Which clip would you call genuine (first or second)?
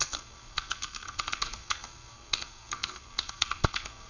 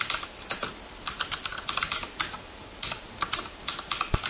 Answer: second